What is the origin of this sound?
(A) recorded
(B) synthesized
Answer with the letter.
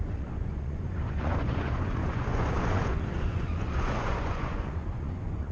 B